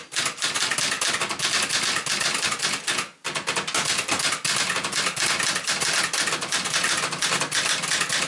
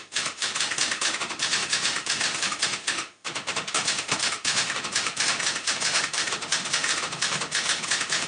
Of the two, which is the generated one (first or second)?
second